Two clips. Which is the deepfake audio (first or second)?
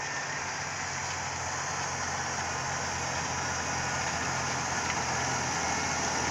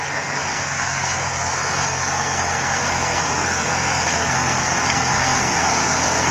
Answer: second